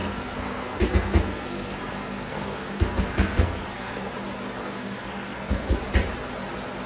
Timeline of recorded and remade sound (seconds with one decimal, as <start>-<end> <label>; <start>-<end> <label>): 0.0-4.1 remade; 4.1-4.6 recorded; 4.6-5.8 remade; 5.8-6.9 recorded